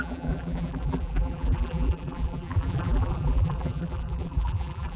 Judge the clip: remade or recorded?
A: remade